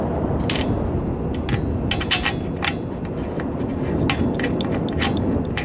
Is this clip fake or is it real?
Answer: real